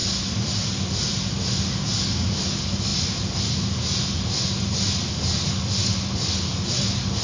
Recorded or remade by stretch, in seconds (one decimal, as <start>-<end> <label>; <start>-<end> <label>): 0.0-7.2 recorded